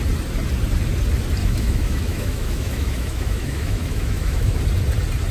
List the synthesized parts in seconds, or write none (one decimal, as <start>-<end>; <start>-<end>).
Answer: 1.4-4.6

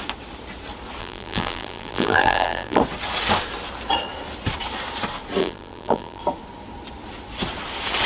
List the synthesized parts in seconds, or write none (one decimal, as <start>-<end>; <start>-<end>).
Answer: 1.0-2.8; 5.4-6.2

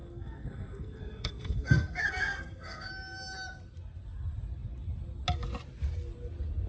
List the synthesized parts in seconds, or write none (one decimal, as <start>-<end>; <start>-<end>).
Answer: 0.0-2.9

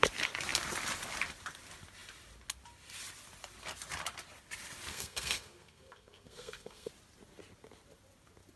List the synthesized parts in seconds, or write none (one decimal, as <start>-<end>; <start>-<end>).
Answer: 4.9-6.9

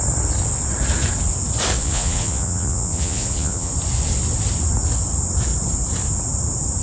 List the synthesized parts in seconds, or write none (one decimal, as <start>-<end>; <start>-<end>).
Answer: 1.8-3.7

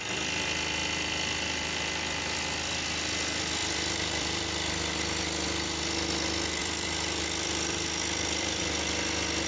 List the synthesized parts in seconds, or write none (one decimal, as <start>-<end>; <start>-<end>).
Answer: 3.6-4.7; 6.6-8.6

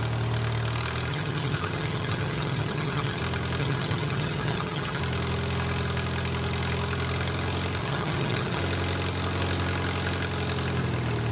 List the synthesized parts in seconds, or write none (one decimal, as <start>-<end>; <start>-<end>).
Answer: 1.1-3.2; 3.6-5.0; 7.8-8.6